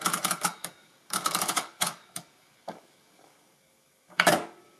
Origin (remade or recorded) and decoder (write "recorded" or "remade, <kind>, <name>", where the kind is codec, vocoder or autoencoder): remade, codec, DAC